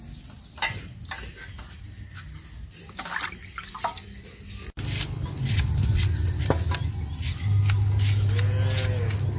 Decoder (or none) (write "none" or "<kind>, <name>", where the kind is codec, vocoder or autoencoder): none